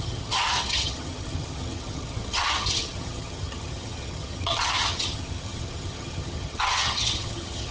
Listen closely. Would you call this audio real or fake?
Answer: fake